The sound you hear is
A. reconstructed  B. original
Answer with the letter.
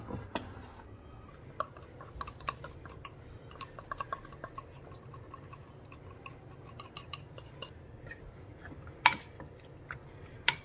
B